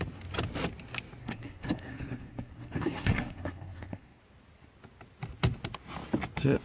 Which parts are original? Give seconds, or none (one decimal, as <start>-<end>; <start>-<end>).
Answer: 0.0-1.2; 4.2-6.6